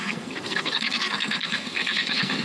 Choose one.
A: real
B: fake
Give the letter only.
B